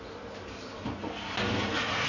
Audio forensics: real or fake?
real